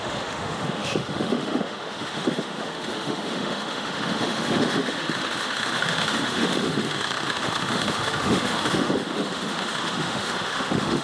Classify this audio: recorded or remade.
remade